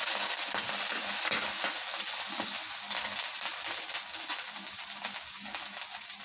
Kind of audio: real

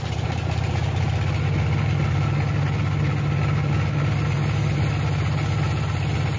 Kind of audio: real